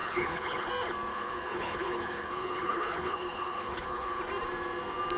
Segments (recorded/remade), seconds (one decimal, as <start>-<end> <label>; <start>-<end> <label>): 0.0-0.7 remade; 0.7-1.1 recorded; 1.1-4.2 remade; 4.2-5.2 recorded